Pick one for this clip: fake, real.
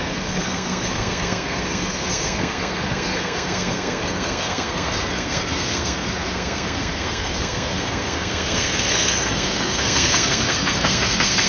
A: fake